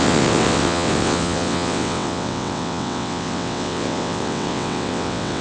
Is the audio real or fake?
fake